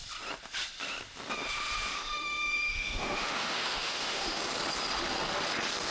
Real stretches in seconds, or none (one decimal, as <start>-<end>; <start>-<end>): 0.0-1.9; 4.4-5.9